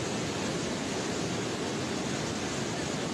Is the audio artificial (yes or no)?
no